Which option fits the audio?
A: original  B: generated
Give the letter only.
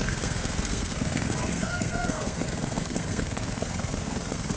B